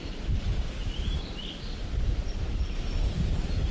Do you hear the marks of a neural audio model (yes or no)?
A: yes